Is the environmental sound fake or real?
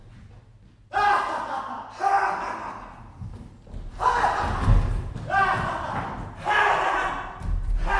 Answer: real